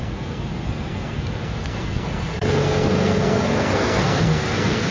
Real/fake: fake